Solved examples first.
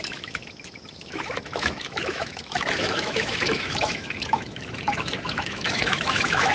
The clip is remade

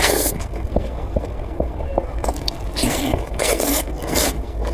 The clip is remade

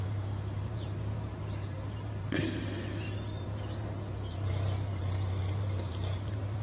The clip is remade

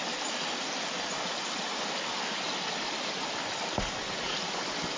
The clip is recorded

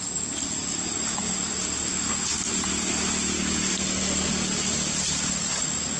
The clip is recorded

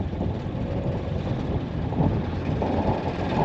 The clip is recorded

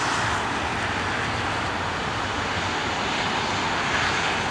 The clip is recorded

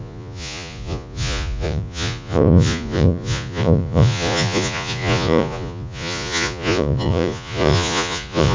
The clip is remade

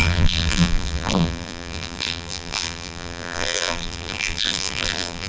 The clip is remade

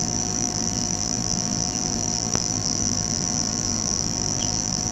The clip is remade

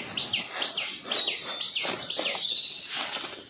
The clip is recorded